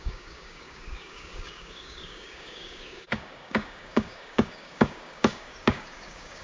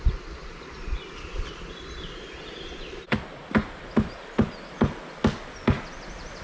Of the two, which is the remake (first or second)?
first